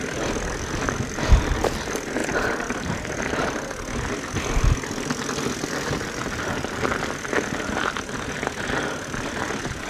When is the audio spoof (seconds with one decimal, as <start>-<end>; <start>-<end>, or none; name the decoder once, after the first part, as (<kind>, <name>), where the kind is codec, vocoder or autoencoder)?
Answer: none